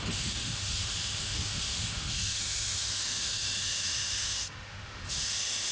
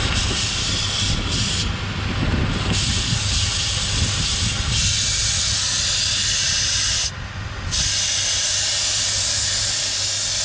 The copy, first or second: first